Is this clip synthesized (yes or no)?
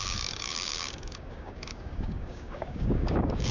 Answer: yes